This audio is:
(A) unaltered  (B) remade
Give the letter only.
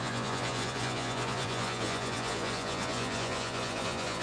B